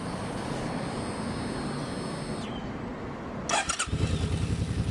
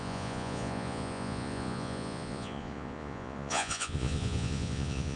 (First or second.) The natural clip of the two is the first